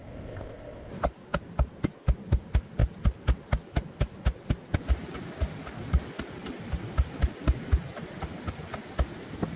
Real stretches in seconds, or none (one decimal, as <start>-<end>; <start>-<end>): 0.9-9.6